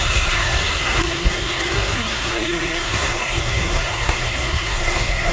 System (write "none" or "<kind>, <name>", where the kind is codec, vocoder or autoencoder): codec, SNAC